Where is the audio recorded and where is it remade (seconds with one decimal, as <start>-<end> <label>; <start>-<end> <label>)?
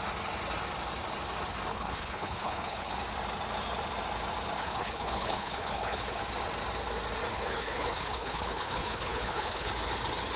0.0-1.7 recorded; 1.7-2.9 remade; 2.9-4.6 recorded; 4.6-6.2 remade; 6.2-7.3 recorded; 7.3-9.7 remade; 9.7-10.4 recorded